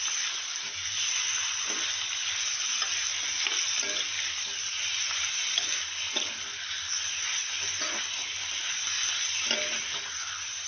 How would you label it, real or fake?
real